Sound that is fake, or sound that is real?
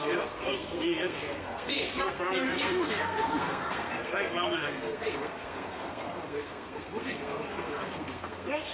fake